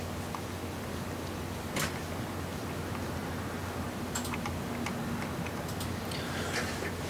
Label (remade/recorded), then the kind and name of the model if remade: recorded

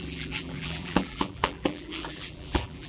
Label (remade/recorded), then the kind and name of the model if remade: remade, vocoder, BigVGAN v2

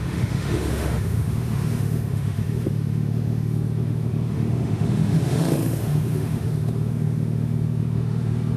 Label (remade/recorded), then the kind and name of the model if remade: remade, autoencoder, DAC-VAE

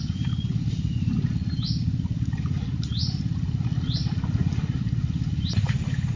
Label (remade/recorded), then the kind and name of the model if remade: recorded